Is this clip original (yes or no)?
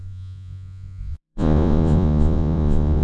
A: no